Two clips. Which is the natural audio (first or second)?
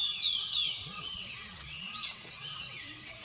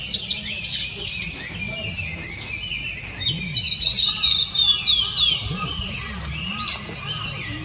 second